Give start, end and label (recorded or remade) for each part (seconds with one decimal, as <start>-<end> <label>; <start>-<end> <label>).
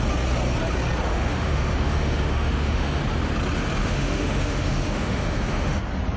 0.0-1.1 recorded; 1.1-3.0 remade; 3.0-3.8 recorded; 3.8-5.8 remade; 5.8-6.2 recorded